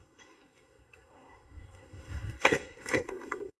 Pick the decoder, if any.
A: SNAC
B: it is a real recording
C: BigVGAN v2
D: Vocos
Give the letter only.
A